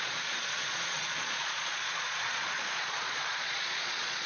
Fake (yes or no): yes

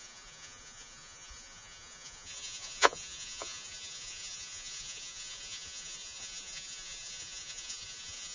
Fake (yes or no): yes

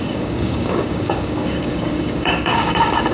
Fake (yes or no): yes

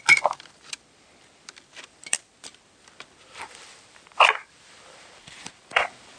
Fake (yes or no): yes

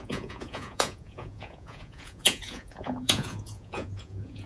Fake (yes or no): yes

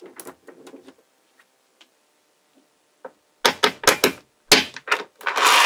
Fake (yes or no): no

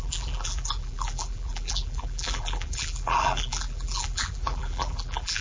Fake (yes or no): yes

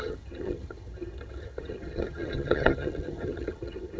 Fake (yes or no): yes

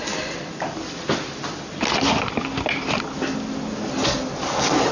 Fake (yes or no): no